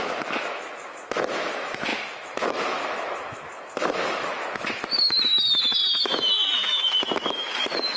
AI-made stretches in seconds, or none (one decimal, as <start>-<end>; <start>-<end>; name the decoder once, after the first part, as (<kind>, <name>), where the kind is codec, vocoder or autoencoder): 0.0-8.0 (autoencoder, DAC-VAE)